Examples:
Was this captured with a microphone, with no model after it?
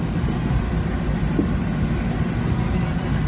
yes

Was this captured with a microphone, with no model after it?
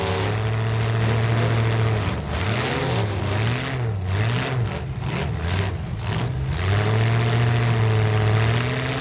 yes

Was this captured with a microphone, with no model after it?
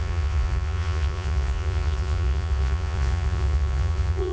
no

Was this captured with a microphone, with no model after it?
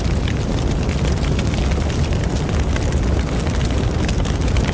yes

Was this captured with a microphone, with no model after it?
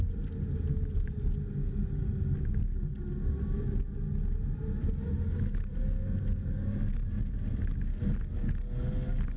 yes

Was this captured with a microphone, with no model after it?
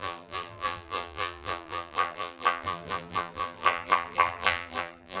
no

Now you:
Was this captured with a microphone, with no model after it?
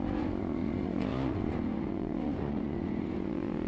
no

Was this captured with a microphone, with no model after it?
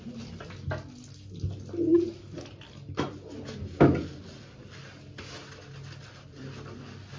yes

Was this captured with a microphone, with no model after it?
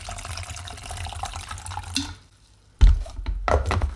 yes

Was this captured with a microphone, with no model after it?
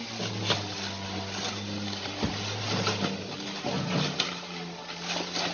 yes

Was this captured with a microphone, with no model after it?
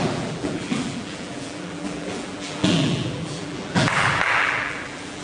no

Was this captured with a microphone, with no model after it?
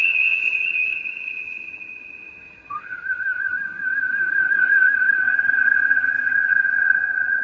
no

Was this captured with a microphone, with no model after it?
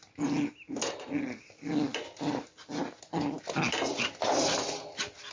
yes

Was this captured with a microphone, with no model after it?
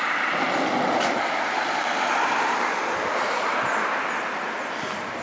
yes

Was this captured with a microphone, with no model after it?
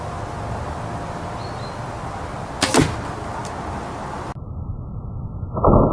yes